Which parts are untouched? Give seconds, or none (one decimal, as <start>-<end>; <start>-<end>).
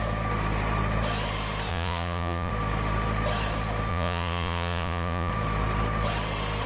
0.0-1.7; 2.5-3.9; 5.3-6.7